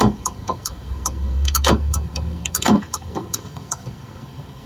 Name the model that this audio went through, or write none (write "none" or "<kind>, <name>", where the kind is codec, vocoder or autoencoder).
codec, SNAC